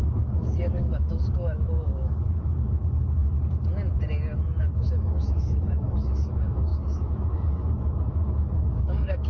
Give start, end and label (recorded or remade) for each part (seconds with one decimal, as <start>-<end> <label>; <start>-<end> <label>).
0.0-3.2 remade; 3.2-4.6 recorded; 4.6-9.3 remade